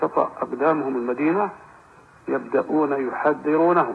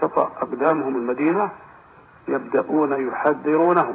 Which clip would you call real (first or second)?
first